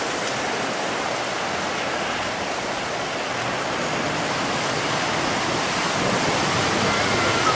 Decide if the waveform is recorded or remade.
recorded